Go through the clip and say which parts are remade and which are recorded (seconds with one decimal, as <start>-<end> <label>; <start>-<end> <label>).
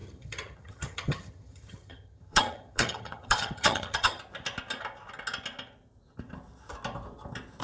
0.0-4.2 remade; 4.2-7.6 recorded